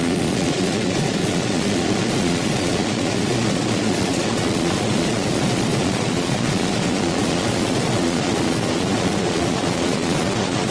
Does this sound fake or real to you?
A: fake